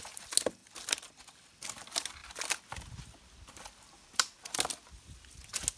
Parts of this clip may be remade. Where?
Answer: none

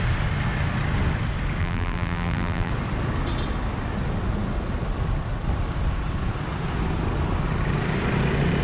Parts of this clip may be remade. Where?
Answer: 1.6-2.7 (vocoder, BigVGAN v2)

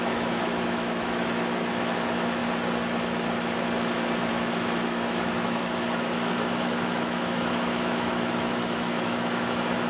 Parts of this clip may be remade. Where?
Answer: 0.0-2.4 (autoencoder, DAC-VAE); 4.3-9.9